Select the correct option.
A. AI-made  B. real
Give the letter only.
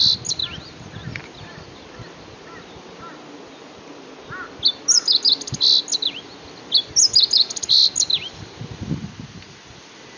B